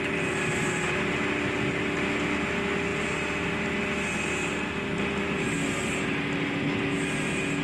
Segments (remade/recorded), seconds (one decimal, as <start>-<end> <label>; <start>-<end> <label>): 0.0-7.6 recorded